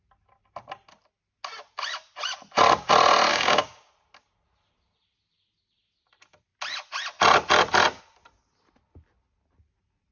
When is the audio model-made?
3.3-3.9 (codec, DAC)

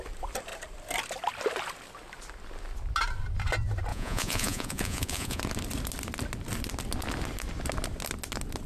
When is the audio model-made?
3.9-5.4 (vocoder, Vocos)

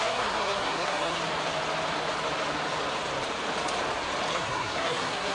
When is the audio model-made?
0.0-1.2 (codec, SNAC); 4.3-5.3

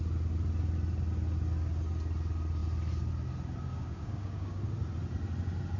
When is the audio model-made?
3.7-4.6 (codec, DAC)